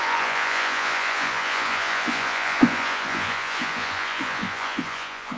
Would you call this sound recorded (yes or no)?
no